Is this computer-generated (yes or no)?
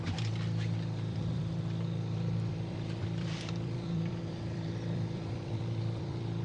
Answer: yes